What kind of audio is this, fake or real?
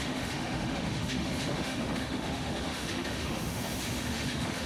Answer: fake